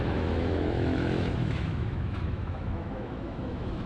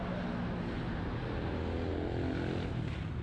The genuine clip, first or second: second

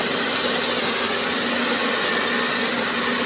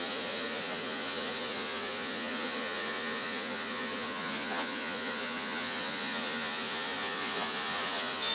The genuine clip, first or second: first